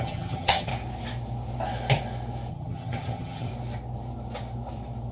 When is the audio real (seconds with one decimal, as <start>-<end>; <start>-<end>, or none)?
0.7-2.5; 3.5-5.1